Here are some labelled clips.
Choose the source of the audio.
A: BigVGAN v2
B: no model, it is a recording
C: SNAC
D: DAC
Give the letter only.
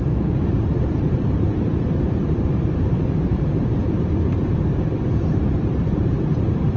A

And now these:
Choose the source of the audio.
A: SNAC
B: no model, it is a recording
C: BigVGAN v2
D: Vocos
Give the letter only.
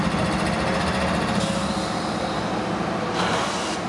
B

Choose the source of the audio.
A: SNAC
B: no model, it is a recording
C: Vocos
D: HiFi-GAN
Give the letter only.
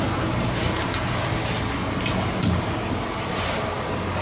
B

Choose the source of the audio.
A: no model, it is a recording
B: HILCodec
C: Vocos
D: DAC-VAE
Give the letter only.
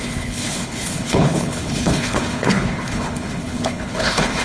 B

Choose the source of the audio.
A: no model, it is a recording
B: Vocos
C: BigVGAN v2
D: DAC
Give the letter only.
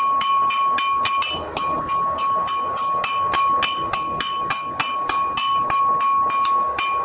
A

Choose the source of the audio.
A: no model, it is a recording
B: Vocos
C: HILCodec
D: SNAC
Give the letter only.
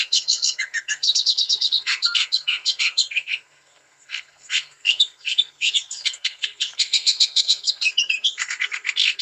D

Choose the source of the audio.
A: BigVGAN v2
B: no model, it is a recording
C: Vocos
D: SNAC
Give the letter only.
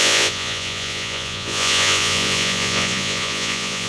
C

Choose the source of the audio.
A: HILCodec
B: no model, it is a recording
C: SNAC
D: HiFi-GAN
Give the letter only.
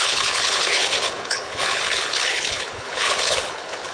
A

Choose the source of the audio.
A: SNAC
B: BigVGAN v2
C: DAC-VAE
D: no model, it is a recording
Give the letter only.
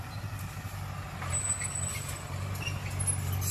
D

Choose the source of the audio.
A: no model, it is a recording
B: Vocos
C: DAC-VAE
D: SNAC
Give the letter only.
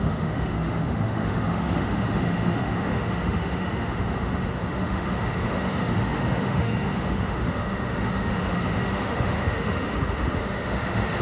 C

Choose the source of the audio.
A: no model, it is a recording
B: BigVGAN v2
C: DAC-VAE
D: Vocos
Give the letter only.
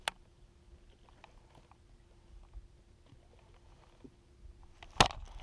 A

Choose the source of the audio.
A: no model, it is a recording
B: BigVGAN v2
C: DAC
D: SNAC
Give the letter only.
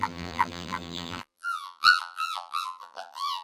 B